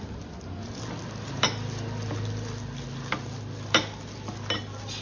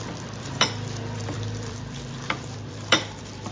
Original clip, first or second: first